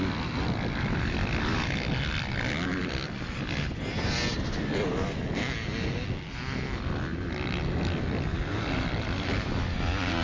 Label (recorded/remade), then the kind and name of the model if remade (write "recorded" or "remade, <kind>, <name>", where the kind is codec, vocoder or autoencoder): recorded